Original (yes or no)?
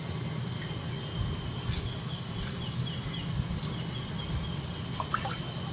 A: yes